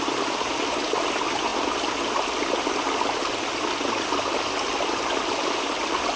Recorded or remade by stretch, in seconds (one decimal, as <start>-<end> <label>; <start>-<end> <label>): 0.0-6.2 recorded